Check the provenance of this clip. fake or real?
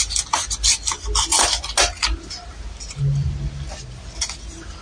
real